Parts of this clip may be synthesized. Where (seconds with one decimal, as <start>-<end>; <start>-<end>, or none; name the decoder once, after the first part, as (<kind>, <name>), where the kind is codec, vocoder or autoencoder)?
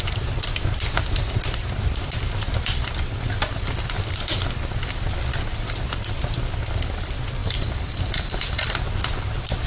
7.4-8.8 (vocoder, BigVGAN v2)